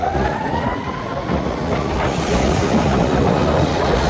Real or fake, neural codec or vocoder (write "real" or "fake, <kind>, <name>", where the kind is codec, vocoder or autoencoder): fake, vocoder, Vocos